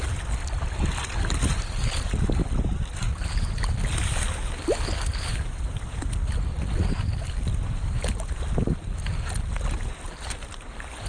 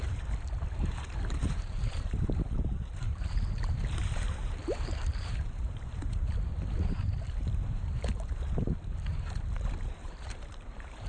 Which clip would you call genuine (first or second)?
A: first